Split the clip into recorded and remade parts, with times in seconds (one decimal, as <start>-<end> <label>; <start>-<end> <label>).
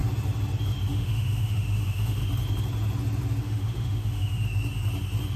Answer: 0.0-0.9 recorded; 0.9-2.2 remade; 2.2-3.4 recorded; 3.4-4.4 remade; 4.4-5.4 recorded